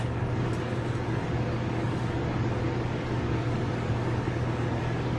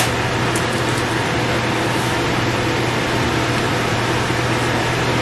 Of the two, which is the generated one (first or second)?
first